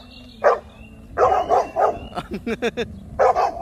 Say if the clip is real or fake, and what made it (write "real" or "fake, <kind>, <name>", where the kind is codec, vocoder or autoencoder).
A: real